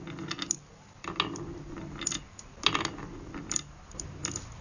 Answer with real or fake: real